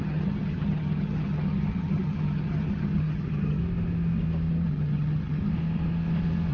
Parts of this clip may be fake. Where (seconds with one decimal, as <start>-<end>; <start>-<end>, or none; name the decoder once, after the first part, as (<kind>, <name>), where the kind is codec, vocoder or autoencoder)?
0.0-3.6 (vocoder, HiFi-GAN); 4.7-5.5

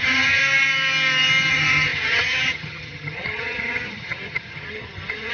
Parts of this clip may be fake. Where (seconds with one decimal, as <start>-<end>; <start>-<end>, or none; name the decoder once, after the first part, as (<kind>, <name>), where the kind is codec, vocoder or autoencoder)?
0.0-0.4 (vocoder, HiFi-GAN); 1.5-5.3

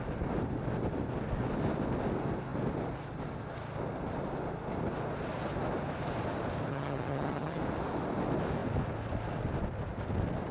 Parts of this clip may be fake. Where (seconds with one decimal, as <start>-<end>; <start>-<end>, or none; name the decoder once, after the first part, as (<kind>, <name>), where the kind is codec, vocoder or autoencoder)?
6.7-7.6 (vocoder, HiFi-GAN)

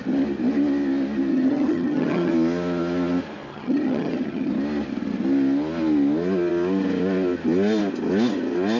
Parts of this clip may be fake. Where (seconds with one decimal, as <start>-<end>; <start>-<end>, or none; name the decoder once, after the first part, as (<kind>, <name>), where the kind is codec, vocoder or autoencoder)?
1.3-2.3 (vocoder, HiFi-GAN); 3.5-4.5

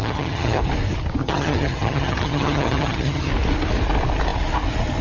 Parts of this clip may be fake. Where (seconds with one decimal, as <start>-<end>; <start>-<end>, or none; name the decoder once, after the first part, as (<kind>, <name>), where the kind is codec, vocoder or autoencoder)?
0.0-0.6 (vocoder, HiFi-GAN); 1.2-3.3

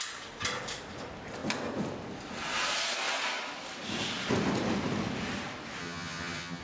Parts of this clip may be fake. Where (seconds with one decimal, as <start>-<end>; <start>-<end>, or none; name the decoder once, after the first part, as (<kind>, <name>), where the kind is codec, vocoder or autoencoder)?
5.8-6.6 (vocoder, HiFi-GAN)